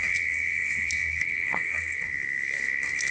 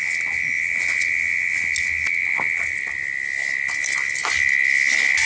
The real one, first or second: second